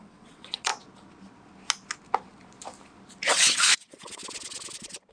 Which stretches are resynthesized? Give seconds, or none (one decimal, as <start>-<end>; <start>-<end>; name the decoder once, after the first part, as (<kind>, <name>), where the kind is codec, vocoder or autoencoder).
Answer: 0.0-0.7 (vocoder, WaveNeXt); 3.3-4.2